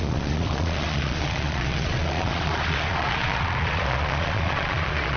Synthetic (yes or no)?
yes